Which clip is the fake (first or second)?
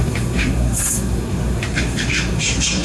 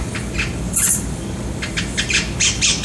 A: first